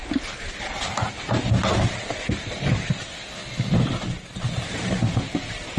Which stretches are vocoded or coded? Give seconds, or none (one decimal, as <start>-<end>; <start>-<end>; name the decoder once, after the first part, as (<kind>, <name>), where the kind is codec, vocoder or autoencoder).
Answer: 0.0-3.4 (vocoder, BigVGAN v2); 4.0-5.8